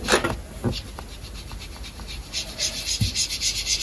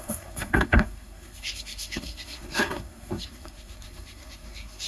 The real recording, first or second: first